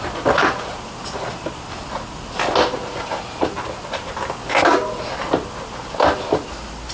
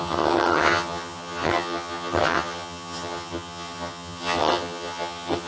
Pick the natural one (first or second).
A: first